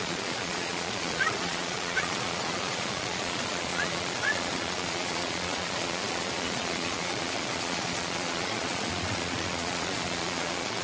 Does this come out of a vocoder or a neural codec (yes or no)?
yes